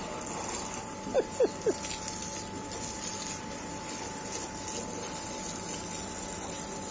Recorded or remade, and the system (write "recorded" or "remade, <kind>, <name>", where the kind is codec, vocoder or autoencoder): recorded